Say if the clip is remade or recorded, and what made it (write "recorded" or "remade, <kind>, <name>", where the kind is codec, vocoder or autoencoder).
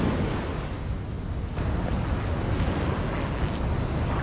recorded